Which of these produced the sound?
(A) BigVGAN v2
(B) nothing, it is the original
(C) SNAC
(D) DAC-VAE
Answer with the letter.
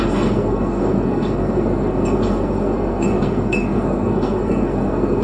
C